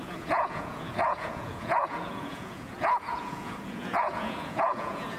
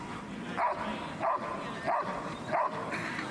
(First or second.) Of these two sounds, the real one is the second